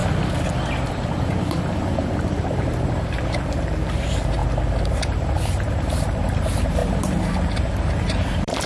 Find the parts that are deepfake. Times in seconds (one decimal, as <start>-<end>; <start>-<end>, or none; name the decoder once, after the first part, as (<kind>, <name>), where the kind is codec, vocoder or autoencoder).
1.2-4.4 (vocoder, BigVGAN v2); 5.0-8.7